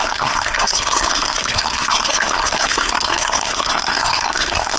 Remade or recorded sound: remade